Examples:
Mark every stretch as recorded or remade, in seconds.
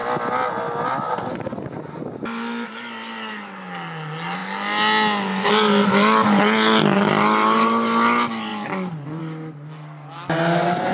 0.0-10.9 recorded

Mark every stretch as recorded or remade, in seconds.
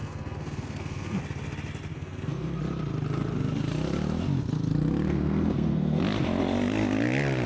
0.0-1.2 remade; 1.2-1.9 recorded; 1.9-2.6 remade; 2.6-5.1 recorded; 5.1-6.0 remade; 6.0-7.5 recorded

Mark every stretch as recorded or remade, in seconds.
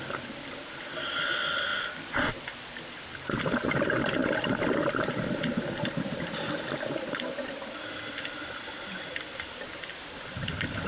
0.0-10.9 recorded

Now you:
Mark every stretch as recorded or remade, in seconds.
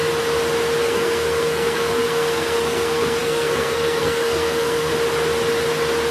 0.0-0.8 recorded; 0.8-4.9 remade; 4.9-6.1 recorded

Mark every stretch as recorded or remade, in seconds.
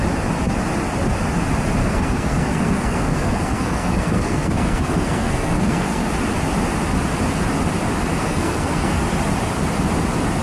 0.0-1.8 recorded; 1.8-6.1 remade; 6.1-8.2 recorded; 8.2-9.0 remade; 9.0-10.4 recorded